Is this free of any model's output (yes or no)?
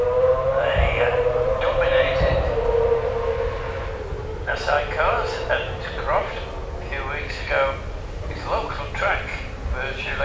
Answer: yes